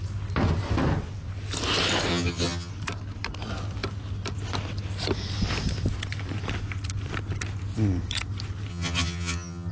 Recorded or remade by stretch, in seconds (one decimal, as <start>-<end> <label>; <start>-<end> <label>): 0.0-2.1 recorded; 2.1-2.7 remade; 2.7-8.7 recorded; 8.7-9.7 remade